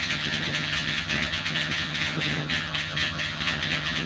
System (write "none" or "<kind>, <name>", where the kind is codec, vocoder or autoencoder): vocoder, HiFi-GAN